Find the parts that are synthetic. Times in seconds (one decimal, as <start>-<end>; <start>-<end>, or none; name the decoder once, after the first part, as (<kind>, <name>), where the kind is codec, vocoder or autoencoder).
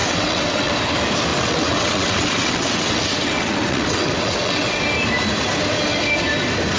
0.0-0.7 (vocoder, WaveNeXt); 1.3-4.8